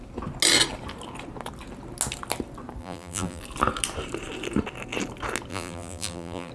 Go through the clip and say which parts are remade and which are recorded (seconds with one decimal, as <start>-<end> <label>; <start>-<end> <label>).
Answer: 0.0-2.8 recorded; 2.8-3.4 remade; 3.4-5.5 recorded; 5.5-6.5 remade